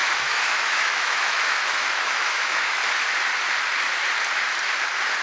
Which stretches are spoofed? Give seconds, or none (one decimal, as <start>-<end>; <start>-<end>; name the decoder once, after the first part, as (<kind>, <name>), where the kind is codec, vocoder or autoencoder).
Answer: 0.0-2.8 (autoencoder, DAC-VAE)